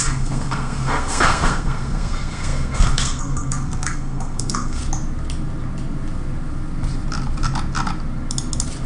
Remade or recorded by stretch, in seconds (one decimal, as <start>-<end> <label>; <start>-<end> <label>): 0.0-4.8 remade; 4.8-8.9 recorded